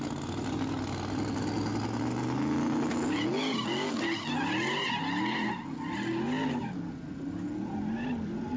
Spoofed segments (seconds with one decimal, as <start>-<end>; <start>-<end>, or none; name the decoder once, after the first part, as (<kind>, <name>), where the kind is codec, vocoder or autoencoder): none